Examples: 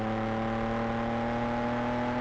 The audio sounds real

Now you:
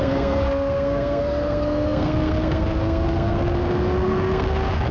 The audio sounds fake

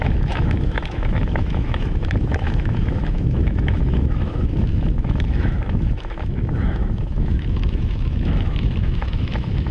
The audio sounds fake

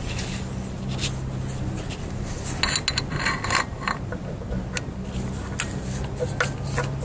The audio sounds real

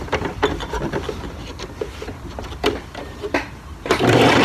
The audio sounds fake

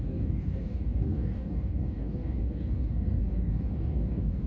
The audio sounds fake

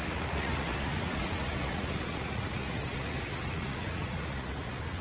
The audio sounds fake